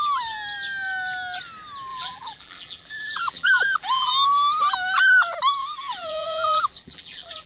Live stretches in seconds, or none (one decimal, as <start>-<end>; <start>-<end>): 0.0-1.9; 4.1-5.6

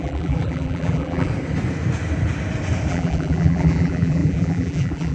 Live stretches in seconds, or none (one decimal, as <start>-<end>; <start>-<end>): 1.3-2.9